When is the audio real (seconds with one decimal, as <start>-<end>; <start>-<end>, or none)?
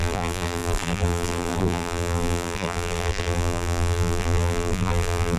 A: none